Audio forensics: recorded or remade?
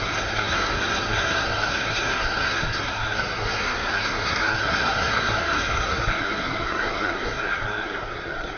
remade